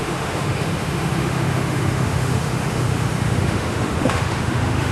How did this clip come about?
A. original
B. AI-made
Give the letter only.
B